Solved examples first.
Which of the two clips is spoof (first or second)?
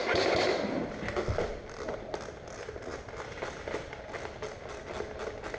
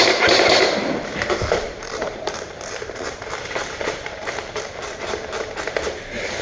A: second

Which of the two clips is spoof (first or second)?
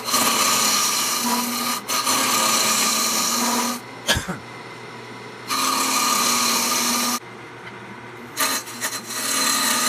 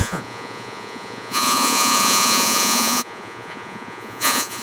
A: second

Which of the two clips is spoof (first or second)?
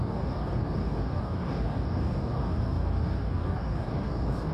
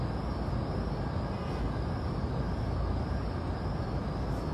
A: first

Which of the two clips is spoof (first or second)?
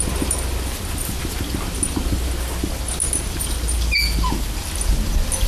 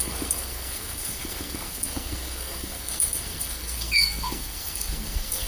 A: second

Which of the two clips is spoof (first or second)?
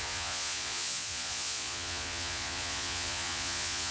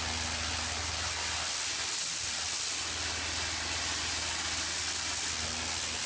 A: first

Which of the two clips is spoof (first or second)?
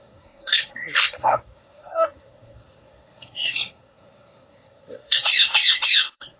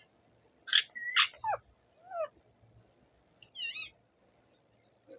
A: first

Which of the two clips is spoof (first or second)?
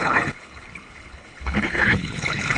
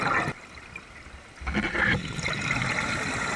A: first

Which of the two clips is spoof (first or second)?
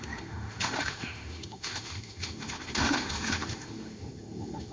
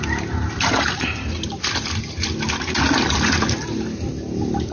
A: first